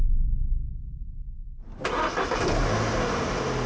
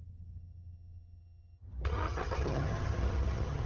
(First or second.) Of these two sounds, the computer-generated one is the second